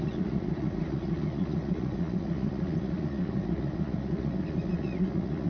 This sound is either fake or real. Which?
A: fake